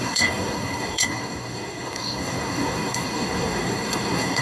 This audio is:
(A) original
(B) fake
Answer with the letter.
B